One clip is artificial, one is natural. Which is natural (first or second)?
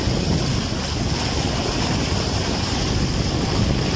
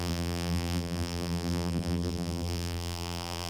first